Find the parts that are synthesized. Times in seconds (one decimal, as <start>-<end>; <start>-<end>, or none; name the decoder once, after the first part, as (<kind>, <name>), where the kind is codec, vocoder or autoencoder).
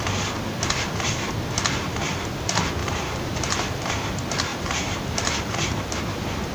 2.8-3.9 (vocoder, BigVGAN v2); 4.5-6.0